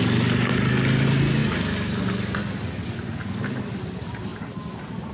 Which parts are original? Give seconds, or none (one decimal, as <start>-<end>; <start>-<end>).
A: 0.0-5.1